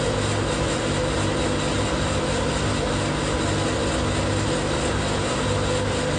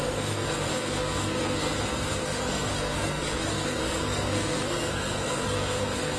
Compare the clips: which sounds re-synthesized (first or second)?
second